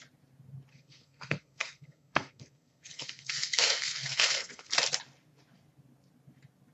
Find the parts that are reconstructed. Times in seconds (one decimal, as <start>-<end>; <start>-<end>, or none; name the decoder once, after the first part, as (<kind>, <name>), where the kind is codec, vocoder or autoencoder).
0.7-4.7 (codec, SNAC)